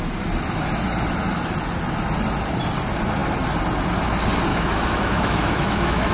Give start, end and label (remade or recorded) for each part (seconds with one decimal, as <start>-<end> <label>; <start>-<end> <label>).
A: 0.0-4.5 recorded; 4.5-6.1 remade